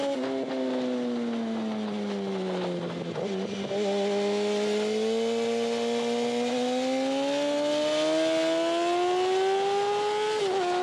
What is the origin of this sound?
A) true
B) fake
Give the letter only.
A